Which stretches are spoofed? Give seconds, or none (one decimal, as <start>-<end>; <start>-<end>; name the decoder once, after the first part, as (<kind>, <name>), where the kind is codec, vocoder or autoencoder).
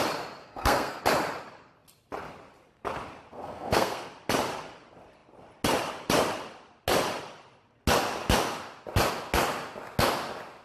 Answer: 0.4-1.0 (codec, SNAC); 3.3-4.1